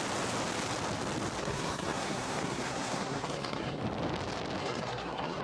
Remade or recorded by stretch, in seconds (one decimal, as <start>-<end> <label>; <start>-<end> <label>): 0.0-1.4 recorded; 1.4-3.8 remade; 3.8-4.6 recorded; 4.6-5.4 remade